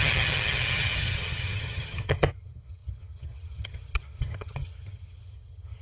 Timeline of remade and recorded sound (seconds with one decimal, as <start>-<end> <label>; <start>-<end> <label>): 0.0-5.8 remade